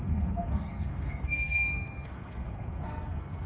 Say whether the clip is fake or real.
fake